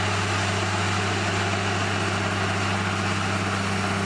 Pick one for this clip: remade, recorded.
recorded